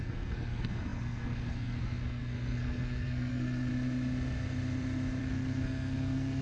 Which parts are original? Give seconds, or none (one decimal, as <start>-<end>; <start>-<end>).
3.7-5.2